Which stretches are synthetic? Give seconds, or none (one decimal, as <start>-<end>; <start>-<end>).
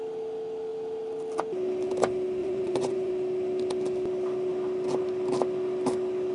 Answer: 2.4-3.1